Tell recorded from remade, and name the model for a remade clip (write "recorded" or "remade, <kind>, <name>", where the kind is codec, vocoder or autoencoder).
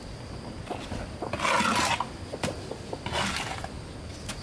recorded